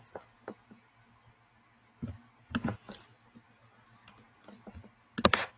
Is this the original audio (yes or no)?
yes